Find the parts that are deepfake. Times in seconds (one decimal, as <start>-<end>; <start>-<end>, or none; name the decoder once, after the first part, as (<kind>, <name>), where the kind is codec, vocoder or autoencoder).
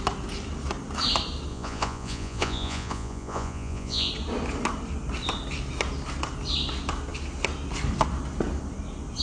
1.5-4.1 (vocoder, Vocos)